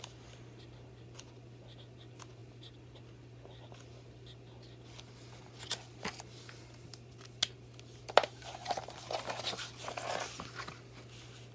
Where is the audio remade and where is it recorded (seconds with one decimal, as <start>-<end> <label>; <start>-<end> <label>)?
0.0-11.5 recorded